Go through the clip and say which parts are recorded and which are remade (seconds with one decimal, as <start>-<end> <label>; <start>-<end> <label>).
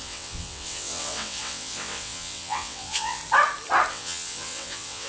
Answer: 0.0-3.2 remade; 3.2-3.9 recorded; 3.9-5.1 remade